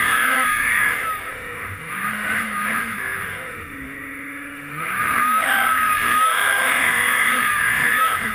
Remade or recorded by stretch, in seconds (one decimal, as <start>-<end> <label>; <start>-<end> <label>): 0.0-8.3 remade